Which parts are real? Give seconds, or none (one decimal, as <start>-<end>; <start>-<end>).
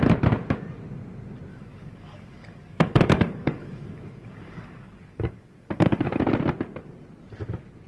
0.0-1.5; 6.2-7.9